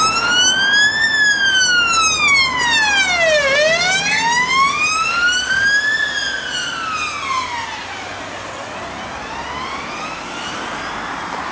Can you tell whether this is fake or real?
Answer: real